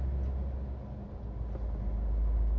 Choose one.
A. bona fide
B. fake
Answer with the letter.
A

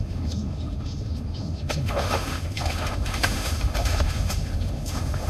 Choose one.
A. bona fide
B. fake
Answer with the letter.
B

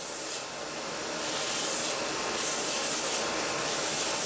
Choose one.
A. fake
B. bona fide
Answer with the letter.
B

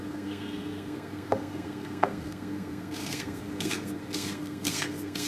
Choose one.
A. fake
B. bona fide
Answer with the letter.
A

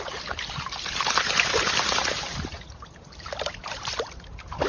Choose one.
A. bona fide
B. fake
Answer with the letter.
A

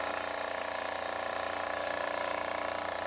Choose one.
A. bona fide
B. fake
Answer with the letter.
A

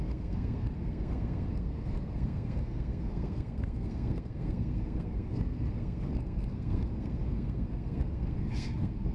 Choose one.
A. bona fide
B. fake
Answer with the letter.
B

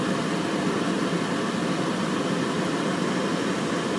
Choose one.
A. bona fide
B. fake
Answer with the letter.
A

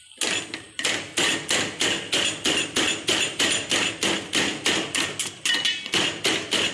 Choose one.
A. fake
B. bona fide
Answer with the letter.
B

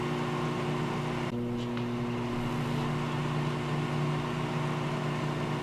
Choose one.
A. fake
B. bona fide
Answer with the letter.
B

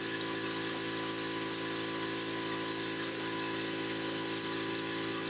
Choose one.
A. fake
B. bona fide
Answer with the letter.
B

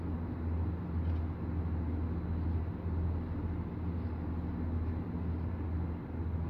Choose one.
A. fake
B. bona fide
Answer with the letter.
B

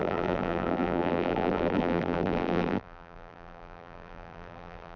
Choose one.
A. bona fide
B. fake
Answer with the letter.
B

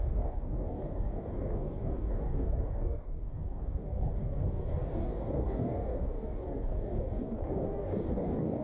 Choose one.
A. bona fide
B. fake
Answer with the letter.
B